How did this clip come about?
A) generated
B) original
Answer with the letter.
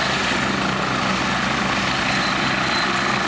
B